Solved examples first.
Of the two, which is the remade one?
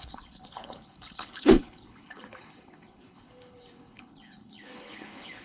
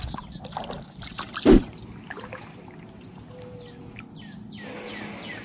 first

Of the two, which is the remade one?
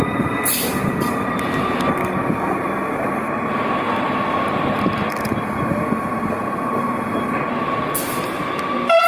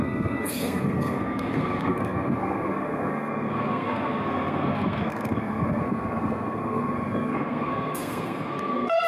second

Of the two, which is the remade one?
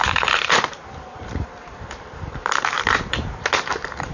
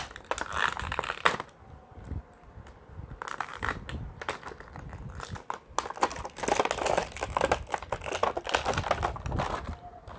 first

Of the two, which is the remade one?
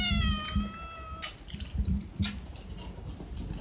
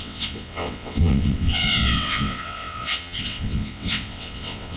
second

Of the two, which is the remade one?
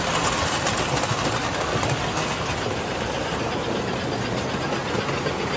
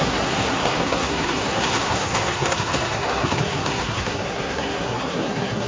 second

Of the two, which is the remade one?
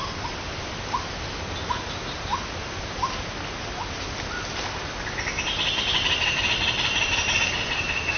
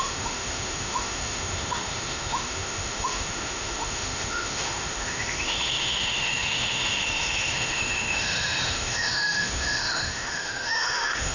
second